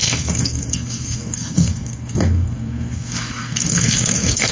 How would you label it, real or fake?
fake